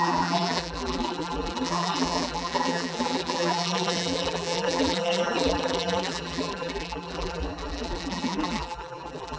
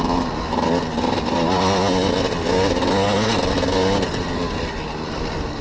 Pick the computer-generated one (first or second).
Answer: first